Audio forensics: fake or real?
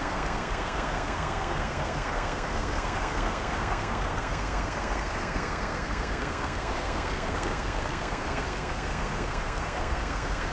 fake